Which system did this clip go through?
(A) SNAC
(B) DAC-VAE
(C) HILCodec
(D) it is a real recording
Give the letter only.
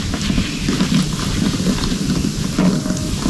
D